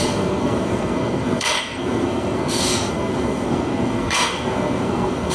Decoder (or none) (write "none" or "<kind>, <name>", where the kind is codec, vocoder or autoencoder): codec, SNAC